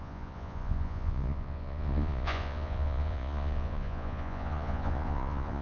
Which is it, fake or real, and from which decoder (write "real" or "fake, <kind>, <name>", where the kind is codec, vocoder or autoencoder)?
fake, vocoder, Vocos